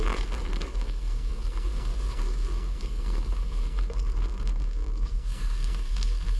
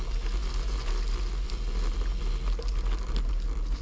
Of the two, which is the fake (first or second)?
first